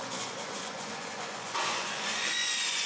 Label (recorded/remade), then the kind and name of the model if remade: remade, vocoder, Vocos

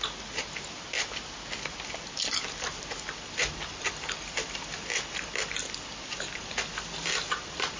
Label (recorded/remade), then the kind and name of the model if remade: recorded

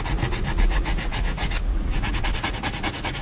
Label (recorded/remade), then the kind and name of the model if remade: remade, vocoder, Vocos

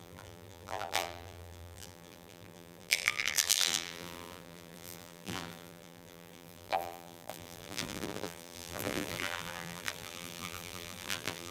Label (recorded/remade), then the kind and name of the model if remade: remade, vocoder, BigVGAN v2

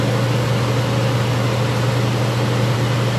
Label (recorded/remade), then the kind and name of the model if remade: recorded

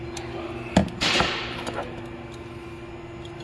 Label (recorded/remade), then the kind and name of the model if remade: recorded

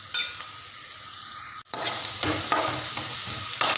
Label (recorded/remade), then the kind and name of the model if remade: recorded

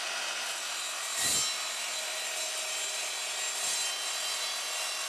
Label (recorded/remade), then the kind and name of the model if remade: recorded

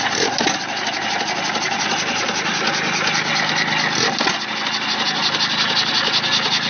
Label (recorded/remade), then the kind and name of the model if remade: recorded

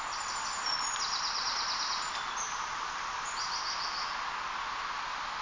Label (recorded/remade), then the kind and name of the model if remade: recorded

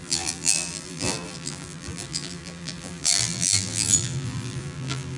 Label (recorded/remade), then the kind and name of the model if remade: remade, vocoder, BigVGAN v2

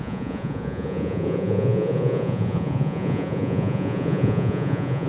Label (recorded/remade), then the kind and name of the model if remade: remade, vocoder, Vocos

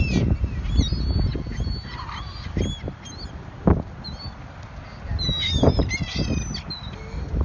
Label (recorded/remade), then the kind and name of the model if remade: recorded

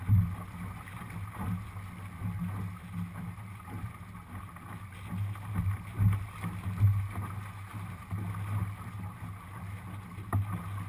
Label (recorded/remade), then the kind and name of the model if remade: recorded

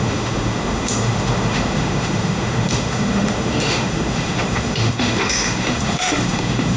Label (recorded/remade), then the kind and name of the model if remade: remade, autoencoder, DAC-VAE